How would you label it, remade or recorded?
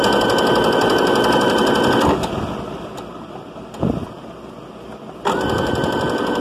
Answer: recorded